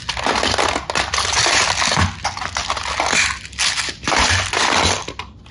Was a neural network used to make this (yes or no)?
no